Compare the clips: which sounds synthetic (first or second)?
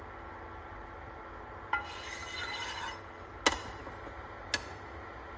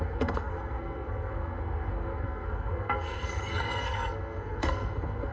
second